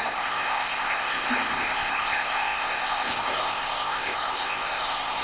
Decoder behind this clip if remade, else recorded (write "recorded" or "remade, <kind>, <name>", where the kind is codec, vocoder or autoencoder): remade, codec, ZipCodec